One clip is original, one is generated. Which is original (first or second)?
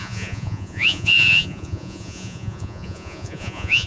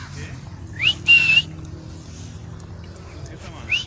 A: second